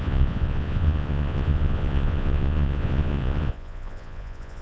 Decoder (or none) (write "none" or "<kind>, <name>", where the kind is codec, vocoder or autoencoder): vocoder, Vocos